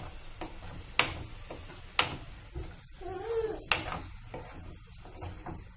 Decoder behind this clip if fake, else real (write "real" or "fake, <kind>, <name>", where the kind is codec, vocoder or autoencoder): real